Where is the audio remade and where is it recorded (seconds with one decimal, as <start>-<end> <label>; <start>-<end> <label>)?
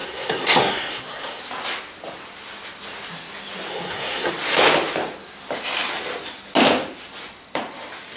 0.0-1.4 remade; 1.4-3.7 recorded; 3.7-4.3 remade; 4.3-8.2 recorded